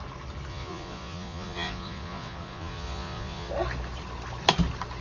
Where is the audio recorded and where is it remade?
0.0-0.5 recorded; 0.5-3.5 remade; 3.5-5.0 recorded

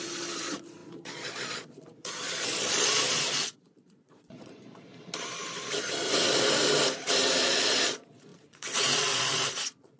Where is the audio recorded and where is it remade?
0.0-4.9 remade; 4.9-5.9 recorded; 5.9-6.6 remade; 6.6-7.4 recorded; 7.4-10.0 remade

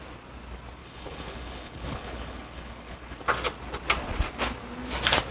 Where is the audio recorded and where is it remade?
0.0-0.8 recorded; 0.8-3.2 remade; 3.2-5.3 recorded

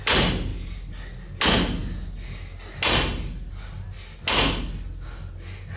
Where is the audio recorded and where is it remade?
0.0-0.5 recorded; 0.5-1.0 remade; 1.0-5.8 recorded

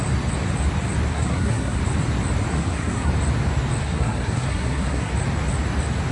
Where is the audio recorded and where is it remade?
0.0-1.1 recorded; 1.1-1.8 remade; 1.8-2.5 recorded; 2.5-3.1 remade; 3.1-3.8 recorded; 3.8-5.1 remade; 5.1-6.1 recorded